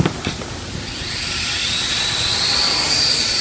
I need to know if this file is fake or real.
real